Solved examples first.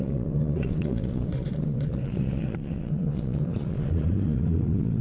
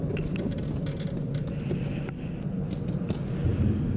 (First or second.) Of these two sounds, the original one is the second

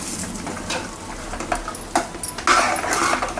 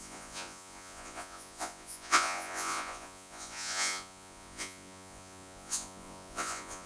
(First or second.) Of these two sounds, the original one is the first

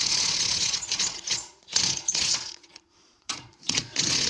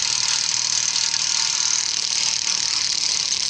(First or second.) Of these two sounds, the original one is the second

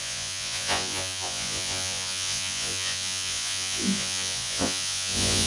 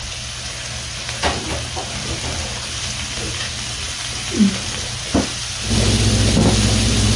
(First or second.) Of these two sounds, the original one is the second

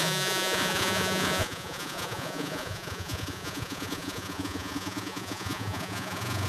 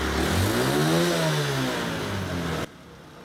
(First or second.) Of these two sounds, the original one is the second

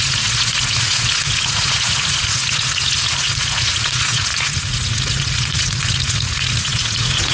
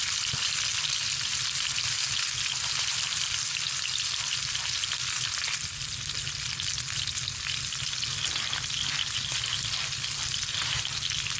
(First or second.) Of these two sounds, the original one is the second